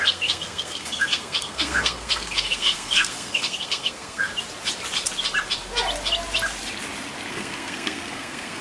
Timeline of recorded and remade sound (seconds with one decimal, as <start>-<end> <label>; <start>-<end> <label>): 0.0-4.3 remade; 4.3-7.3 recorded; 7.3-8.6 remade